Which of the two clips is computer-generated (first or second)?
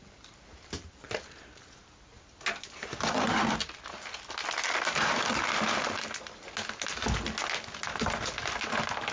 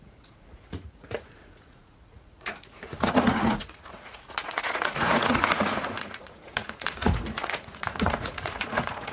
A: second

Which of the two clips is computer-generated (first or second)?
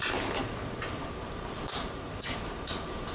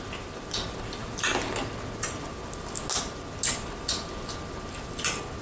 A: first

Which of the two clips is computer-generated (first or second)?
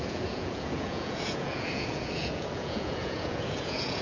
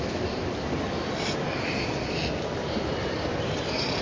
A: first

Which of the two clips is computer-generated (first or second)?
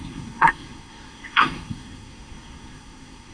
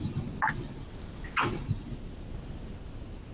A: first